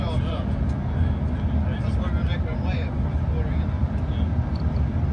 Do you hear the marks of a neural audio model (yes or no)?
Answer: no